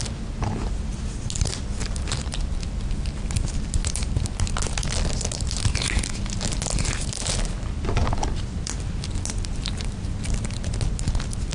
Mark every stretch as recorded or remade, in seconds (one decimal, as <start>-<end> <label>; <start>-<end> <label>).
0.0-11.5 recorded